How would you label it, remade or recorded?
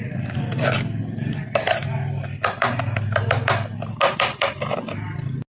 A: recorded